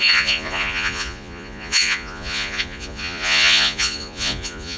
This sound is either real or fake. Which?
fake